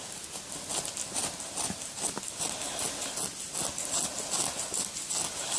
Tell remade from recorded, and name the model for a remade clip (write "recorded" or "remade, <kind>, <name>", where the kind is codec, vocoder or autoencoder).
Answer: recorded